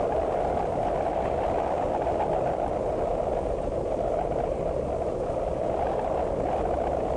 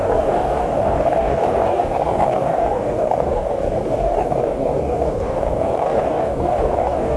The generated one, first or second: second